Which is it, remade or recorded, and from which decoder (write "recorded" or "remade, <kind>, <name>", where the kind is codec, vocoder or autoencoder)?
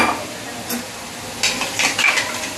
recorded